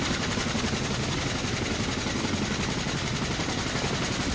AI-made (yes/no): no